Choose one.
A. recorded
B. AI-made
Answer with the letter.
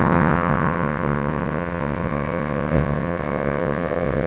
B